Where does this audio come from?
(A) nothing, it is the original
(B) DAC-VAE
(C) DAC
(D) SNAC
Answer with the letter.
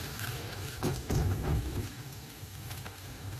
C